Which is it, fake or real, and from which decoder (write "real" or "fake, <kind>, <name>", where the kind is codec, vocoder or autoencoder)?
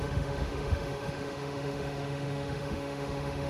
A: fake, autoencoder, DAC-VAE